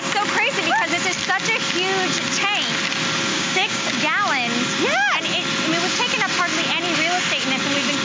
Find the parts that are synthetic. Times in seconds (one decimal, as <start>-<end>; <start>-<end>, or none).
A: 3.3-3.9